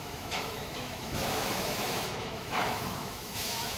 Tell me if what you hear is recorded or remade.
remade